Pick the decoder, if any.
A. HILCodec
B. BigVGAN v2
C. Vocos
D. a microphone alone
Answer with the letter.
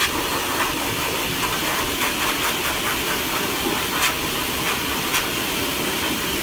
B